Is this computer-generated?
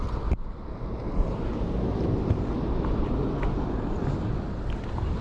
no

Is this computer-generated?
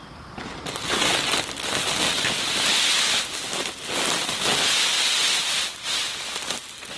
no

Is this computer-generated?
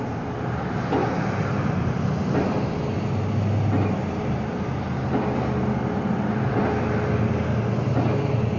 no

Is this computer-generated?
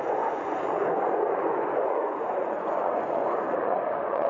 yes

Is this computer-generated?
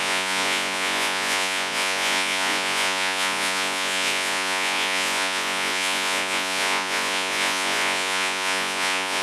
yes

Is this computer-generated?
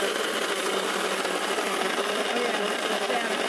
no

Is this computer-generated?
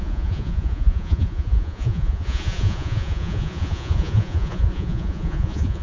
yes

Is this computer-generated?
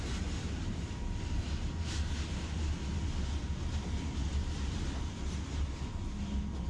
no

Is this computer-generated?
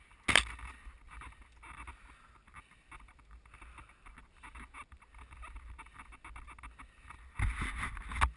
no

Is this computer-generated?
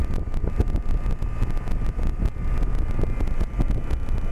no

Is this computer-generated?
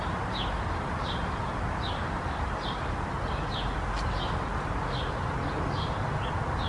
no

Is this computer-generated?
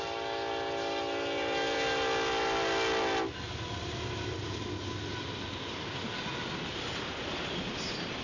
no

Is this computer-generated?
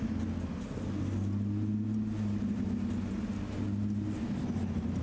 no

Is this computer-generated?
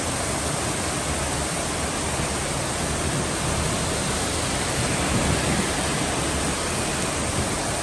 no